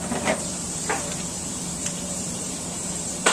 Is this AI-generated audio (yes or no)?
yes